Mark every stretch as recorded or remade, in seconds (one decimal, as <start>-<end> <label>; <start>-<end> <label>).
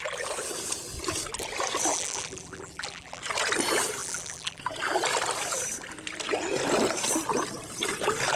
0.0-1.9 recorded; 1.9-3.2 remade; 3.2-4.0 recorded; 4.0-4.6 remade; 4.6-8.4 recorded